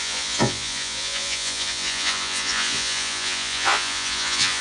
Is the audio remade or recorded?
remade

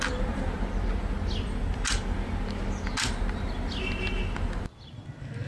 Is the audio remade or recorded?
recorded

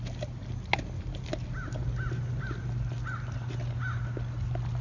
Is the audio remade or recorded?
recorded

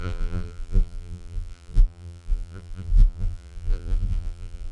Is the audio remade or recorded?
remade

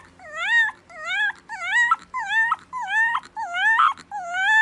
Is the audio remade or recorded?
recorded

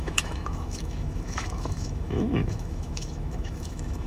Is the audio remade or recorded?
remade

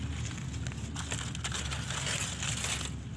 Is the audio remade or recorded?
recorded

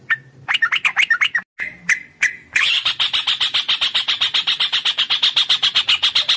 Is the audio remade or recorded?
recorded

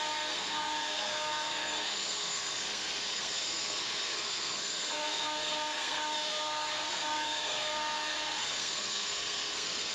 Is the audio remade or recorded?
remade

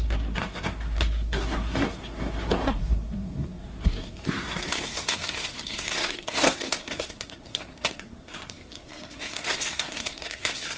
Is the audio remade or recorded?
remade